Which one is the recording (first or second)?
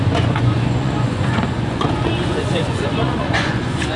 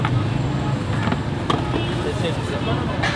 second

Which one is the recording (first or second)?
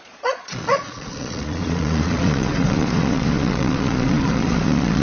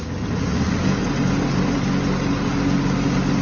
second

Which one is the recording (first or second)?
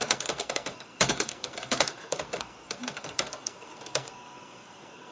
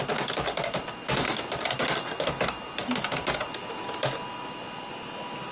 second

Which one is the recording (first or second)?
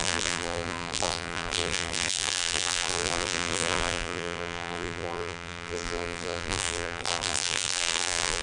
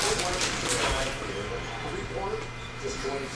second